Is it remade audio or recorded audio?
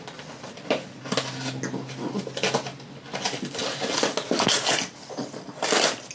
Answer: recorded